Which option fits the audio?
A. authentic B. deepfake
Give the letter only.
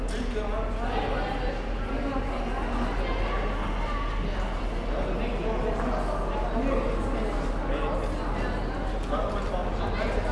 A